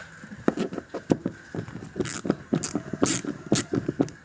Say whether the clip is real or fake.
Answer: real